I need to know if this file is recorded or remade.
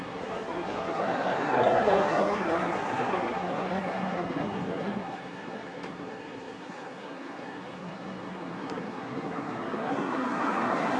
remade